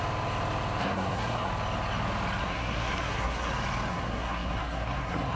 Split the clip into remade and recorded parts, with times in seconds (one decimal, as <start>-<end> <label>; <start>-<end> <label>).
0.0-0.8 recorded; 0.8-1.5 remade; 1.5-2.4 recorded; 2.4-3.5 remade; 3.5-3.9 recorded; 3.9-5.4 remade